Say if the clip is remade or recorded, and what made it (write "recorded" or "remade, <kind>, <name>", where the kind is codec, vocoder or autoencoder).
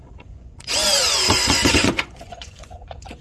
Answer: remade, vocoder, Vocos